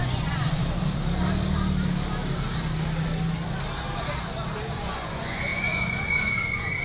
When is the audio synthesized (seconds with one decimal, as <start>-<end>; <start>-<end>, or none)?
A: 0.0-0.6; 4.7-6.8